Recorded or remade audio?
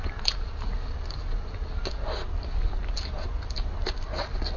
recorded